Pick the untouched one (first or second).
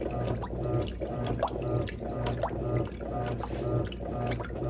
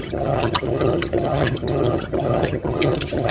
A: first